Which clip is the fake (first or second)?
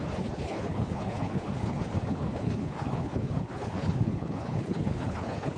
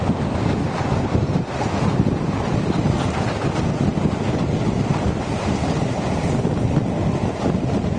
first